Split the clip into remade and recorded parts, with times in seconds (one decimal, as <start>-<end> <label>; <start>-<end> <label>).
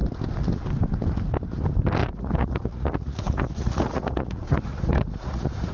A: 0.0-2.0 recorded; 2.0-5.7 remade